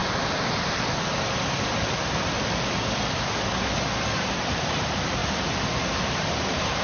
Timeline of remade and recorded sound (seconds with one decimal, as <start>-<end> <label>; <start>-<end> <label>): 0.0-4.1 recorded; 4.1-5.2 remade; 5.2-6.0 recorded; 6.0-6.8 remade